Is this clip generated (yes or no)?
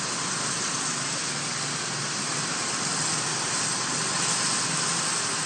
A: no